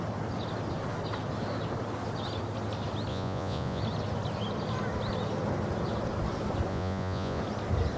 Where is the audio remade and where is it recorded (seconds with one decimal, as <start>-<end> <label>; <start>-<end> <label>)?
0.0-3.1 recorded; 3.1-3.8 remade; 3.8-6.7 recorded; 6.7-7.4 remade; 7.4-8.0 recorded